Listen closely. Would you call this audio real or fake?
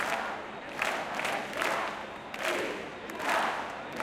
real